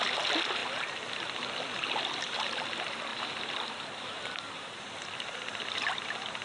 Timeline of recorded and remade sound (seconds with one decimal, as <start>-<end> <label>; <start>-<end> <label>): 0.0-3.1 recorded; 3.1-4.8 remade; 4.8-6.4 recorded